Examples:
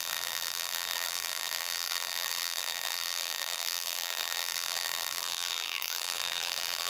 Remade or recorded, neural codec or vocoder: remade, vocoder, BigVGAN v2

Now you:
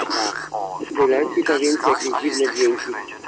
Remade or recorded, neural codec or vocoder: recorded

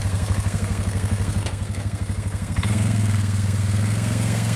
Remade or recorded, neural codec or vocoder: remade, codec, SNAC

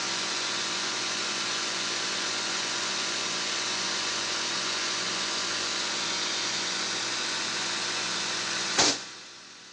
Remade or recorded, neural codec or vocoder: remade, vocoder, Vocos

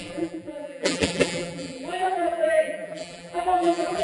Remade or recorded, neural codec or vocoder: remade, vocoder, BigVGAN v2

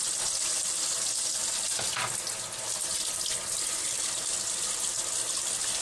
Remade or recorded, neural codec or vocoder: recorded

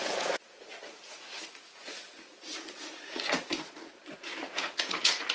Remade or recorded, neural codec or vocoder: remade, vocoder, Vocos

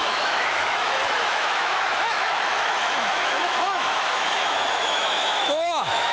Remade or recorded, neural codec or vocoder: remade, autoencoder, DAC-VAE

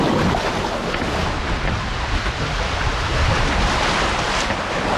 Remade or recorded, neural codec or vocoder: recorded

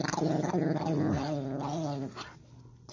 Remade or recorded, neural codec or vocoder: recorded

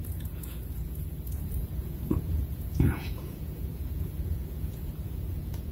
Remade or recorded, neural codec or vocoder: remade, vocoder, Vocos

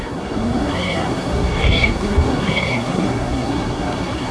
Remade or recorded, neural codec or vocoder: remade, codec, SNAC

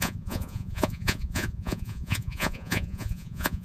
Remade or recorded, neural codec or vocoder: remade, vocoder, Vocos